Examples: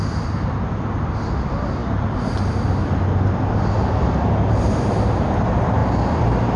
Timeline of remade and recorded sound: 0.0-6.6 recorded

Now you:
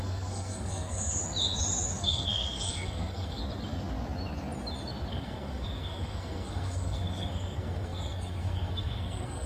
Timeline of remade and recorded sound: 0.0-1.2 remade; 1.2-2.0 recorded; 2.0-3.4 remade; 3.4-5.1 recorded; 5.1-9.5 remade